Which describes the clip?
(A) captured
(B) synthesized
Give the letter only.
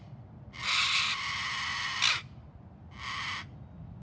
A